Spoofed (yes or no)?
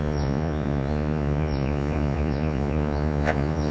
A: yes